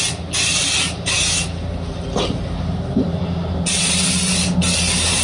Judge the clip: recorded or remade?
recorded